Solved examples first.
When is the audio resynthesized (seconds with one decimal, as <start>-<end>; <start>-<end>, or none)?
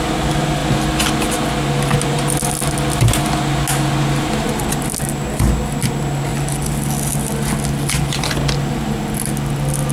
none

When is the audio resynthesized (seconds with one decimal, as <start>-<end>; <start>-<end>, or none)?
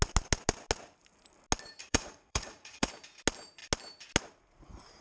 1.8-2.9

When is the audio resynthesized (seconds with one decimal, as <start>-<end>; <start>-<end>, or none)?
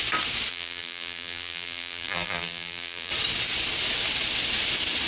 0.5-3.1